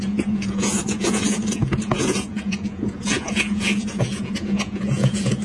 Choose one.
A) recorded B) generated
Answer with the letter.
B